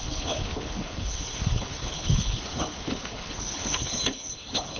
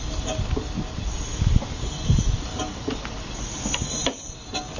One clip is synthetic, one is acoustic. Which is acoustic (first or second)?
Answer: second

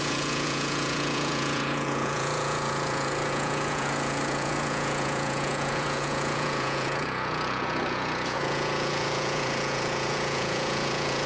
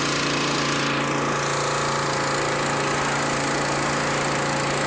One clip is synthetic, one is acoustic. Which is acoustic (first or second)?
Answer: second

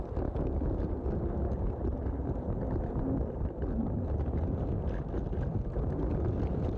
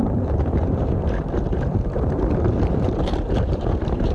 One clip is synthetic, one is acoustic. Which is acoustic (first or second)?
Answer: first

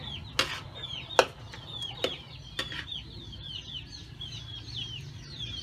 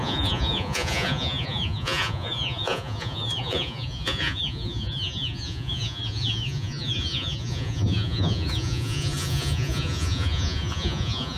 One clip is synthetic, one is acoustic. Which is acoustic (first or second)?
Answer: first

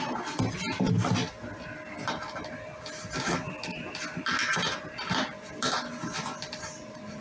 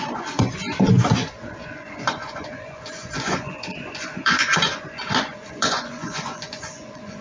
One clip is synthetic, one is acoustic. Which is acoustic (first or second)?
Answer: first